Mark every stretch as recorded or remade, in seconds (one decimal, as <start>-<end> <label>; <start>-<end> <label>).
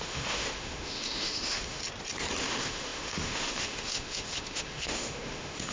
0.0-1.8 remade; 1.8-2.4 recorded; 2.4-5.7 remade